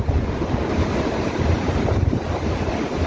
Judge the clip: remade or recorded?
remade